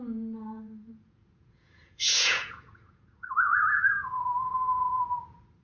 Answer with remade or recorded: remade